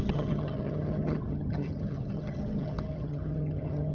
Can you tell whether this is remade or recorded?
remade